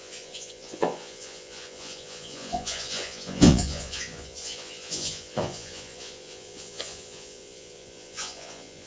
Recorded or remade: remade